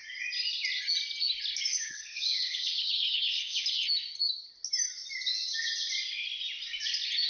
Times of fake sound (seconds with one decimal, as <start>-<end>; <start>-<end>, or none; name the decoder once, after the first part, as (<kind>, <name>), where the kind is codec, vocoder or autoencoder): 1.7-3.6 (codec, HILCodec)